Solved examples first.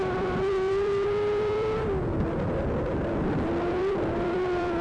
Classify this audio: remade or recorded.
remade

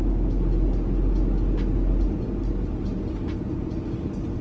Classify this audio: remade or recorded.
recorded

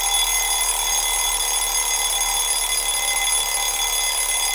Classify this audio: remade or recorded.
recorded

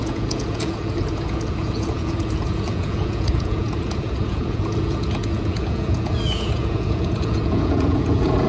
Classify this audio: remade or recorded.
remade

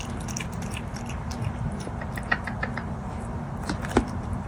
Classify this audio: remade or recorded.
recorded